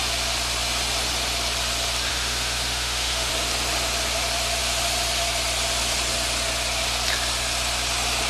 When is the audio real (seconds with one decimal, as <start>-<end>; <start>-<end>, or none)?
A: 0.0-2.1; 3.3-8.3